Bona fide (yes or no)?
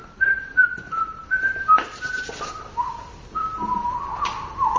yes